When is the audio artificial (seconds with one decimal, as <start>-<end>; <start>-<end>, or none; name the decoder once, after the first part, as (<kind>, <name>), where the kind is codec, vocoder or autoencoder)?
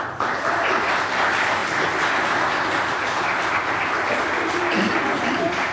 none